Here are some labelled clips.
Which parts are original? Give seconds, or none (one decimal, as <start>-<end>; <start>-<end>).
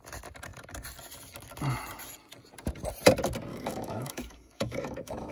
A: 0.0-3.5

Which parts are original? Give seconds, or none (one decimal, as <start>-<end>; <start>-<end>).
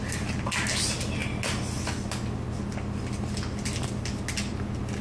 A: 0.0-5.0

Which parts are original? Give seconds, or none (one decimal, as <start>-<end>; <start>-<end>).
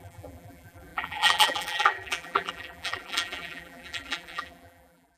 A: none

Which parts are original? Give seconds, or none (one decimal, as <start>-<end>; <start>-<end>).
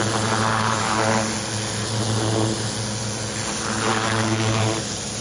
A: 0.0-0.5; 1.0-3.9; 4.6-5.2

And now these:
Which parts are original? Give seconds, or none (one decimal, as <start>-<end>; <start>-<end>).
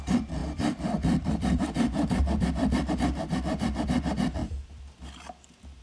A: 0.0-0.4; 2.9-5.8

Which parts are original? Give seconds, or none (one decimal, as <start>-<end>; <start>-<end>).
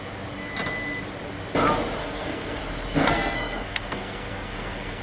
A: 0.0-2.0; 2.6-3.0